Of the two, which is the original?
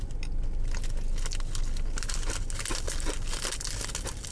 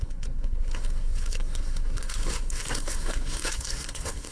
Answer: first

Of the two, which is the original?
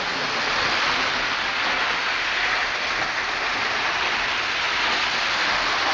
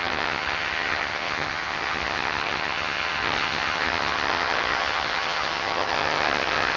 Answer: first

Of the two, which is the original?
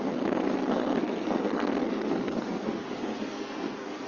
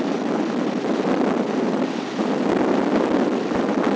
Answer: second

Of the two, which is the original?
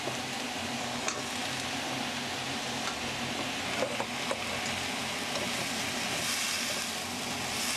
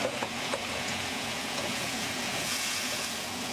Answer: first